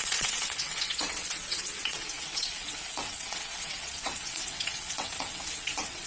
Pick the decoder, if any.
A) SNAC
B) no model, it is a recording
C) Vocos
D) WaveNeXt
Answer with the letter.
D